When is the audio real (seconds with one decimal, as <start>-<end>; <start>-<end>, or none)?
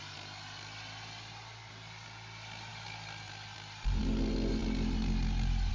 0.0-5.7